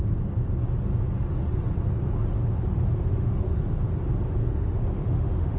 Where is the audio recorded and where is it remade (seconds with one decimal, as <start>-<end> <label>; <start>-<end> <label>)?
0.0-3.1 recorded; 3.1-3.9 remade; 3.9-4.4 recorded; 4.4-5.6 remade